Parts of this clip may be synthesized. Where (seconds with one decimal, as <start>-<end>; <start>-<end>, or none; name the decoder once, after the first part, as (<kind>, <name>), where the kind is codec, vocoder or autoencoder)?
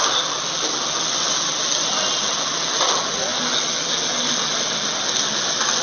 none